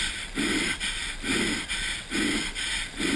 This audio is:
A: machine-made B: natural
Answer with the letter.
B